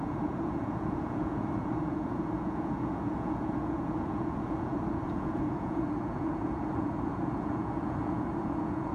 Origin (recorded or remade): remade